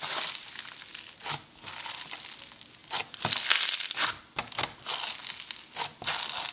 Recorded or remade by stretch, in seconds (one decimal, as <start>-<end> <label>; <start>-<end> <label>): 0.0-2.8 recorded; 2.8-5.3 remade; 5.3-6.5 recorded